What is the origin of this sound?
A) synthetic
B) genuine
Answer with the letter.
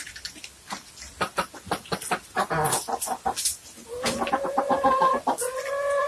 B